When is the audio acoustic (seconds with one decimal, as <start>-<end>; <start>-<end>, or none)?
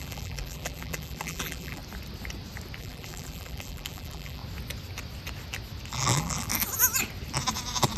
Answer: 1.8-2.8; 4.4-5.9; 6.5-8.0